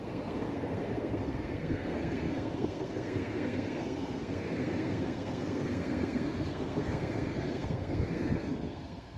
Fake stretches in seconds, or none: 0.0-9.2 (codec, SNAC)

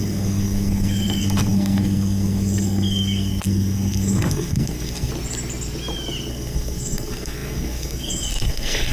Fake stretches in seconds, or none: 0.0-5.1 (codec, SNAC); 6.3-8.9

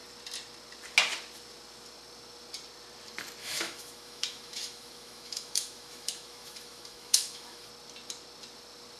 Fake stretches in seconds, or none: 3.4-7.7 (autoencoder, DAC-VAE)

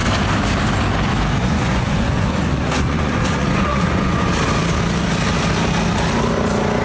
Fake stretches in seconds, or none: 1.4-4.3 (vocoder, Vocos)

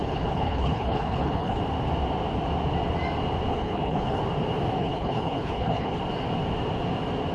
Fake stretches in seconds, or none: 0.0-1.6 (codec, HILCodec); 3.5-4.2; 4.8-6.0